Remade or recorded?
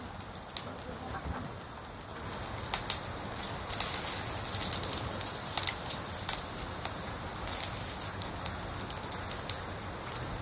recorded